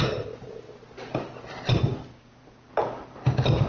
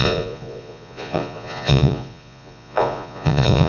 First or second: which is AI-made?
second